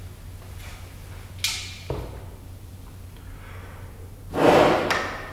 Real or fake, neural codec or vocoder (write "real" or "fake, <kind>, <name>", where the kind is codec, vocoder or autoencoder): real